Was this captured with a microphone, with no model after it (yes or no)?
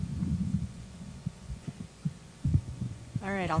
no